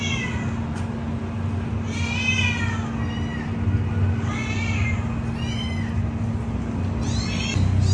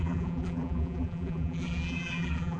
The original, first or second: first